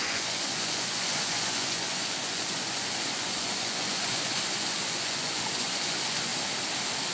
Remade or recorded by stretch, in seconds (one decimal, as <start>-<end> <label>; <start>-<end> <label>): 0.0-6.3 remade; 6.3-7.1 recorded